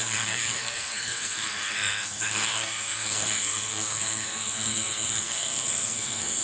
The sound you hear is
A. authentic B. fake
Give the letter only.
B